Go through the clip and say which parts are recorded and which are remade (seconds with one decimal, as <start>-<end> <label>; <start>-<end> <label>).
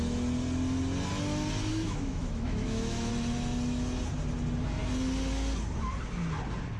0.0-1.7 recorded; 1.7-3.1 remade; 3.1-6.8 recorded